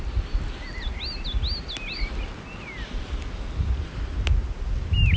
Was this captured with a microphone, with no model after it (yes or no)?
yes